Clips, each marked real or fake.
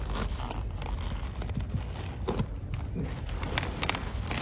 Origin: real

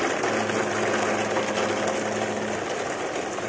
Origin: real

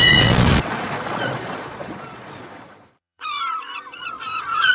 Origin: fake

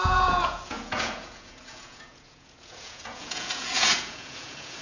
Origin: fake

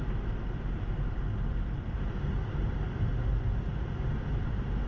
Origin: real